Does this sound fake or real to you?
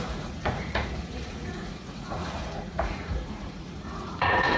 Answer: fake